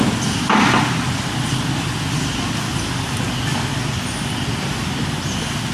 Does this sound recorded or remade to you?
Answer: recorded